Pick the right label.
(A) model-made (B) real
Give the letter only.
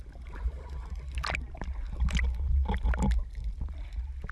B